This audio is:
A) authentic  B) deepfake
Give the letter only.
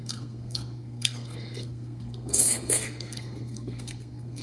B